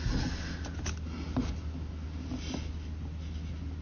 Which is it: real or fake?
real